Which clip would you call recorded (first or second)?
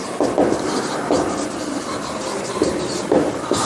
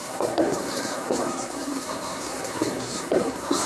first